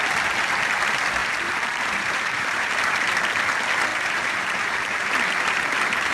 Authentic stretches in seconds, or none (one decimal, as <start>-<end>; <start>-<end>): 0.0-1.2; 2.7-3.9; 5.1-6.1